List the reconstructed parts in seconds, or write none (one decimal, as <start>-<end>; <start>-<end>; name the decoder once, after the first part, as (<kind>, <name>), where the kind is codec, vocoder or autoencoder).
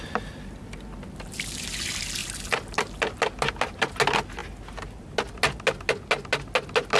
none